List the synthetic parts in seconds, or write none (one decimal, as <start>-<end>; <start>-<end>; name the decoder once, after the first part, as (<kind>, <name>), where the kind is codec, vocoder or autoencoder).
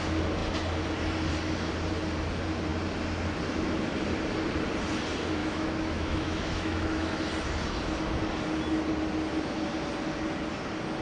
5.4-7.2 (autoencoder, DAC-VAE)